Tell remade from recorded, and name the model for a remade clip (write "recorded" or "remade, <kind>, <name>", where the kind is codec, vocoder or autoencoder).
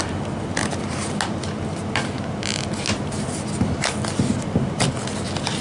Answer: recorded